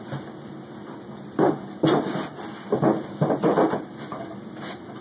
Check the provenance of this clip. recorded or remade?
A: recorded